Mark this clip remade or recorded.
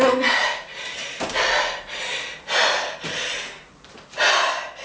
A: recorded